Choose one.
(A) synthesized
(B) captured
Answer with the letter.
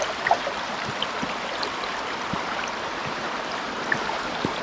A